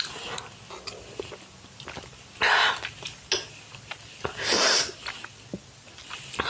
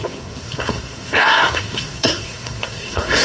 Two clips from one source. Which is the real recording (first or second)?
first